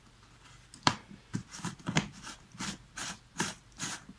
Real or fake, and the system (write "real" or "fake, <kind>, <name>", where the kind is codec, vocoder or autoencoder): real